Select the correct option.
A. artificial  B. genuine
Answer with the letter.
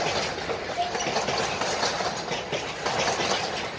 B